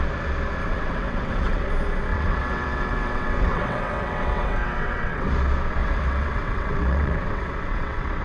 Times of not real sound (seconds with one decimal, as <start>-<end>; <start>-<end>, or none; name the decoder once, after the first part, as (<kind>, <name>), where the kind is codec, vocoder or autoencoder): 0.6-1.7 (vocoder, WaveNeXt); 2.1-5.3; 5.8-8.2